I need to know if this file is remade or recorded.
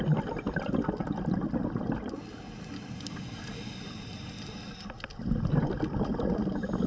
recorded